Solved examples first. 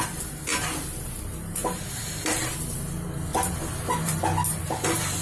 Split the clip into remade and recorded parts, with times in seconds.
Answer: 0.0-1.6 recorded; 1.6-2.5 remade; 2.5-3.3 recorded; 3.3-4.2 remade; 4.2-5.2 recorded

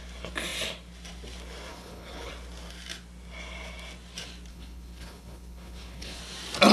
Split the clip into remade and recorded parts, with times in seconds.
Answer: 0.0-1.7 recorded; 1.7-2.3 remade; 2.3-4.5 recorded; 4.5-6.2 remade; 6.2-6.7 recorded

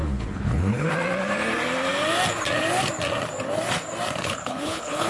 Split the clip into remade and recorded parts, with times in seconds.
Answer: 0.0-0.9 remade; 0.9-4.2 recorded; 4.2-5.1 remade

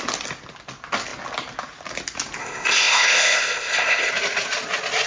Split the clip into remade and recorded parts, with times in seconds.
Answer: 0.0-2.4 recorded; 2.4-4.1 remade; 4.1-5.1 recorded